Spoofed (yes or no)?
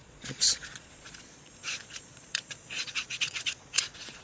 yes